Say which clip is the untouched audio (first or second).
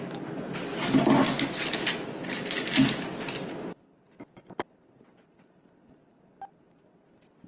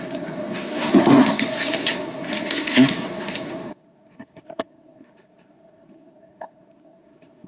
first